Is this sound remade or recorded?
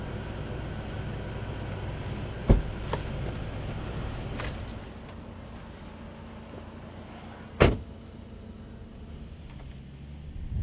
recorded